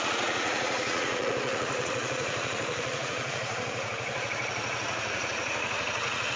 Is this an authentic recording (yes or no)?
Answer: no